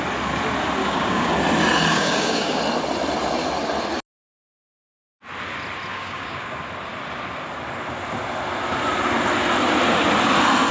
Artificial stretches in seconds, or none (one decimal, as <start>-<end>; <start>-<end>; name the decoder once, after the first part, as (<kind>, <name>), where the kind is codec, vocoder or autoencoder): 0.8-1.3 (codec, DAC); 1.9-2.6; 5.9-6.6